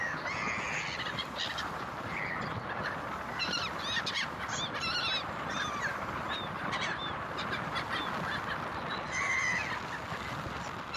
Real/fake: real